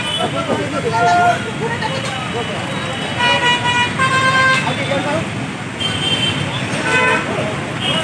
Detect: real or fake real